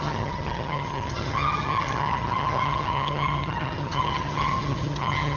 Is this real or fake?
fake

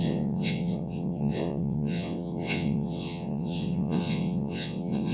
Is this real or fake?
fake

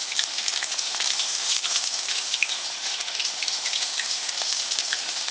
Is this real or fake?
fake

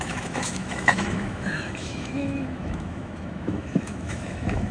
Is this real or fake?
fake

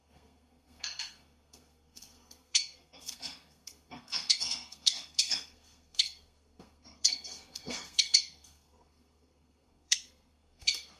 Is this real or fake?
fake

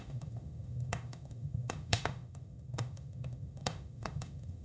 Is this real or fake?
fake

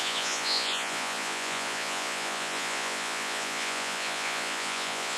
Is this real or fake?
fake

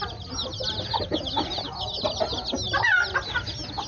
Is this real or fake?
real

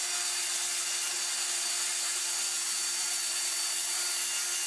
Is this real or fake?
real